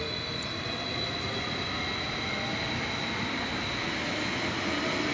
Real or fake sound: real